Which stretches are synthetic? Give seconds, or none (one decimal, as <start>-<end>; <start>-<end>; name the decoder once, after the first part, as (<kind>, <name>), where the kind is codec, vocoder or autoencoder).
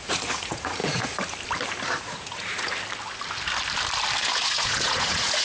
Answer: 0.0-0.8 (vocoder, Vocos); 2.0-2.7; 4.2-5.4